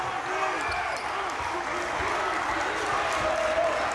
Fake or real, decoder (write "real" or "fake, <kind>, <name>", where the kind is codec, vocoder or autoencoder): real